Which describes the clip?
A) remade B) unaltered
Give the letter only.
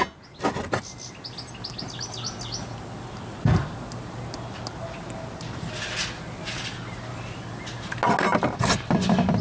B